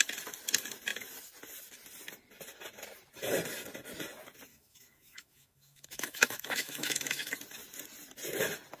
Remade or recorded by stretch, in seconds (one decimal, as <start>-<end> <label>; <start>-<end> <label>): 0.0-4.5 recorded; 4.5-7.3 remade; 7.3-8.8 recorded